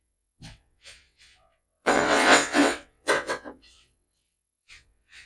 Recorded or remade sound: remade